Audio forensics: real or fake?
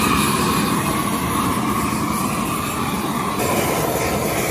fake